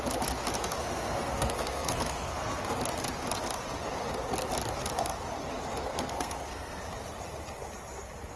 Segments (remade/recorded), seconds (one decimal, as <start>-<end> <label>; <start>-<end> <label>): 0.0-0.8 recorded; 0.8-2.8 remade; 2.8-5.8 recorded; 5.8-6.8 remade; 6.8-8.4 recorded